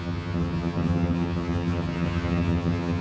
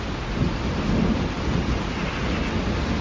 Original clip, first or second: second